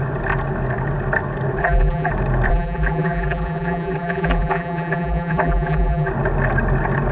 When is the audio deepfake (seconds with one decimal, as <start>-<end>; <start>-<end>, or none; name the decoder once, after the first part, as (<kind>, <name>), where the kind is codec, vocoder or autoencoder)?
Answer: 1.6-2.1 (vocoder, BigVGAN v2); 2.5-6.1